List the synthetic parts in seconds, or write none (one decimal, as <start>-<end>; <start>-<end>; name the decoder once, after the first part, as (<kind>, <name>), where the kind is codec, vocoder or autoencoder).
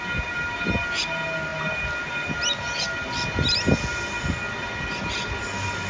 none